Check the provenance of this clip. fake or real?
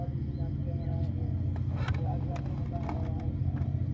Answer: real